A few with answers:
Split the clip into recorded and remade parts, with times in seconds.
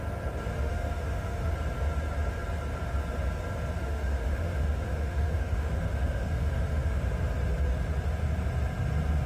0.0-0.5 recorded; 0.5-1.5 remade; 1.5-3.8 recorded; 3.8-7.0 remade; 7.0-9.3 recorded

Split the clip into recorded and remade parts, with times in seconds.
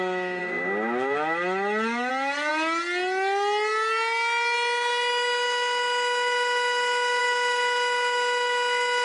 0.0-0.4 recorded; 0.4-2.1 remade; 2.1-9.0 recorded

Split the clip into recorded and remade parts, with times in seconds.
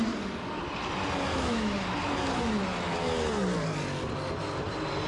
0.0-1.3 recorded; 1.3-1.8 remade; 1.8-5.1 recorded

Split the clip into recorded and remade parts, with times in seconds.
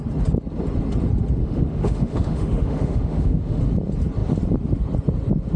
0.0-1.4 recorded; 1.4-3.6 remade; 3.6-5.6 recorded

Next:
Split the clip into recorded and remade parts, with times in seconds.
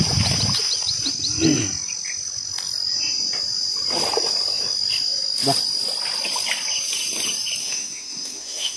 0.0-7.6 recorded; 7.6-8.8 remade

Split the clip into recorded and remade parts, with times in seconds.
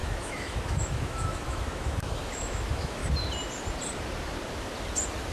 0.0-3.0 remade; 3.0-5.3 recorded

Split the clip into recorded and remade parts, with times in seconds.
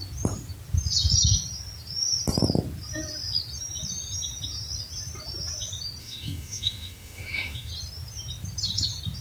0.0-6.0 recorded; 6.0-7.7 remade; 7.7-9.2 recorded